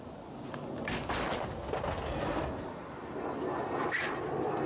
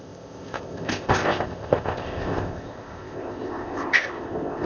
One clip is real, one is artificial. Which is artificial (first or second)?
second